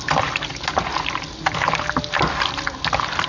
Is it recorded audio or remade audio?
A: recorded